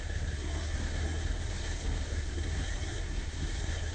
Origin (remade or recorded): remade